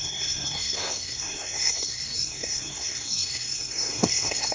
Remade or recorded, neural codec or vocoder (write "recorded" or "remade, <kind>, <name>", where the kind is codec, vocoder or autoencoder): remade, codec, SNAC